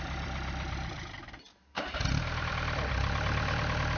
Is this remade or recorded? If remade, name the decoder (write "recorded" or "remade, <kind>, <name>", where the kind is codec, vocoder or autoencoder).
remade, vocoder, BigVGAN v2